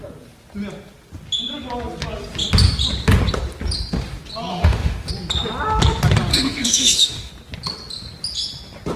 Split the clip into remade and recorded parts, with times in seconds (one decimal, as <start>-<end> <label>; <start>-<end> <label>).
0.0-4.5 recorded; 4.5-5.1 remade; 5.1-6.3 recorded; 6.3-7.3 remade; 7.3-9.0 recorded